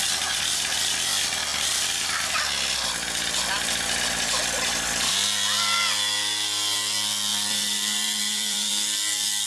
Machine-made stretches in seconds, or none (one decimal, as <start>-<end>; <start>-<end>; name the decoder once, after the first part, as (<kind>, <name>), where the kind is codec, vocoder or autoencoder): 7.3-8.7 (vocoder, BigVGAN v2)